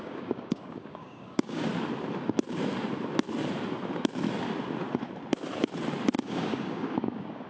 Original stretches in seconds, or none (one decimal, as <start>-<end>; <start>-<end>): 1.7-6.2